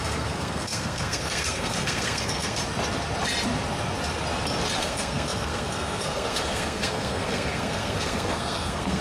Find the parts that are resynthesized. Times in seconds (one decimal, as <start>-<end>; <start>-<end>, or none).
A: 0.0-2.6; 4.8-9.0